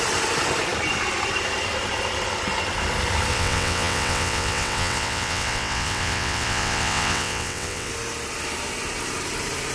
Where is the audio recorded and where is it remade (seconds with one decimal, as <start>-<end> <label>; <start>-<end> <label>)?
0.0-3.3 recorded; 3.3-7.9 remade; 7.9-9.7 recorded